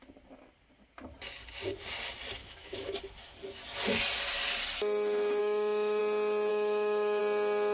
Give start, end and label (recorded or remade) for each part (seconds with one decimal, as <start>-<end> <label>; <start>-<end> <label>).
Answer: 0.0-2.4 recorded; 2.4-3.0 remade; 3.0-5.4 recorded; 5.4-6.0 remade; 6.0-6.5 recorded; 6.5-7.2 remade; 7.2-7.7 recorded